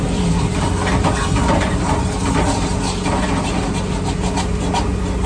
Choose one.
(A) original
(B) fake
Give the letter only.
A